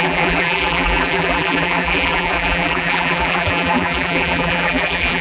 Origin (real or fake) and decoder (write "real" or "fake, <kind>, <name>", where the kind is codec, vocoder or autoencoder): fake, vocoder, BigVGAN v2